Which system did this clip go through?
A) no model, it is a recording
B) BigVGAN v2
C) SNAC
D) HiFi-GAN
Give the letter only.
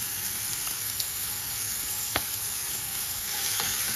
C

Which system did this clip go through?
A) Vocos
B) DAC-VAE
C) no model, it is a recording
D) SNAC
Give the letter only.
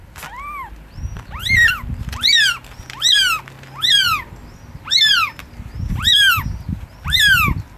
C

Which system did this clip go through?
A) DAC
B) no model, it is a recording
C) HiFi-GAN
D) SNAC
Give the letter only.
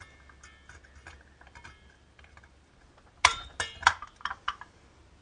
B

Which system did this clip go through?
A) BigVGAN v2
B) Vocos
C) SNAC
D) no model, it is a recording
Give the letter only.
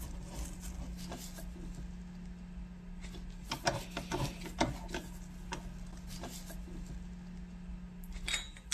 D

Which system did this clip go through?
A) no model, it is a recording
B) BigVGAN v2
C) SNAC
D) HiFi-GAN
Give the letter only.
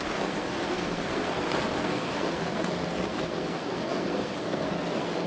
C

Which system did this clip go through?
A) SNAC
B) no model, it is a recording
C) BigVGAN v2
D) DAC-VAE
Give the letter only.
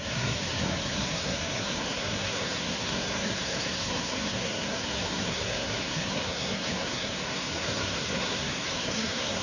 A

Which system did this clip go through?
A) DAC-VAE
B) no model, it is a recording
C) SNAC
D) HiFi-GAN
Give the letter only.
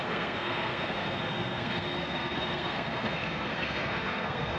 C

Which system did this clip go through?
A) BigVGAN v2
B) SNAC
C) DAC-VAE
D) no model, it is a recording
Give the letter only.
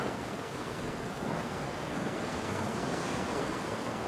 B